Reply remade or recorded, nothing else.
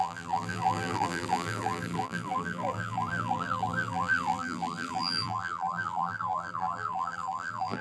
remade